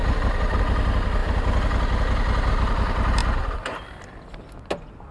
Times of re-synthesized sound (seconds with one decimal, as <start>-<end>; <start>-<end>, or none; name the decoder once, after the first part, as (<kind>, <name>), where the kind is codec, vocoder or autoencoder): none